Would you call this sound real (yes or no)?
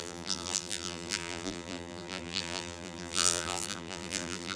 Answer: no